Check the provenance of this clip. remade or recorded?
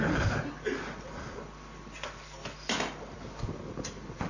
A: recorded